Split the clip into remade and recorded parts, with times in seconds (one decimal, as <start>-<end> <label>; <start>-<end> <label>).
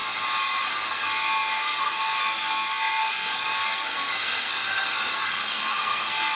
0.0-0.9 recorded; 0.9-6.3 remade